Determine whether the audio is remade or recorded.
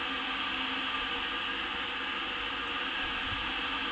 recorded